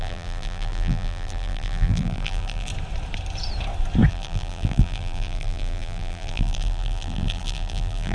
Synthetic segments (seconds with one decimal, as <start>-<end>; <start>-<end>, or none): 0.0-2.7; 4.1-8.1